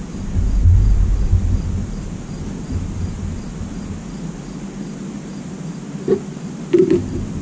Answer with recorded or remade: recorded